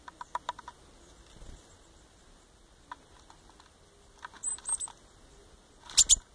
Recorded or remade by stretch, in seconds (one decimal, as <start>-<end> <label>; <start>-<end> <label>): 0.0-6.3 recorded